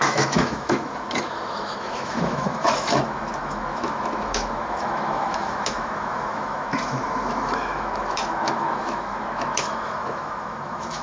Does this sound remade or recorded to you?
remade